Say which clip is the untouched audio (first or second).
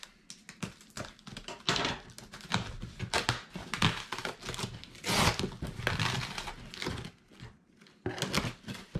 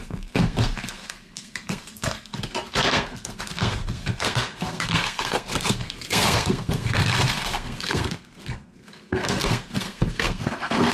first